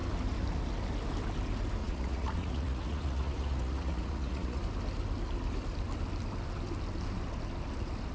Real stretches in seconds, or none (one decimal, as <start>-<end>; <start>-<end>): 0.0-1.8; 4.6-8.1